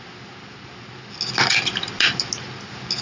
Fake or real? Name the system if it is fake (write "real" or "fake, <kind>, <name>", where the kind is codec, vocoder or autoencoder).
real